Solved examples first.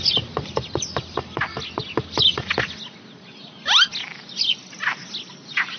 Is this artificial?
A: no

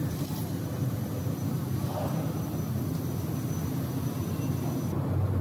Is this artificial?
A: no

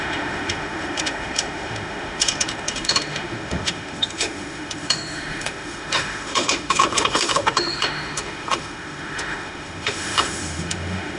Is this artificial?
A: yes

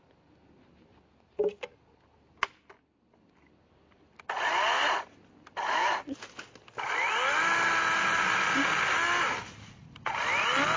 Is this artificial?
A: no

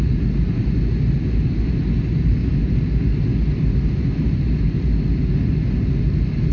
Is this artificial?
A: no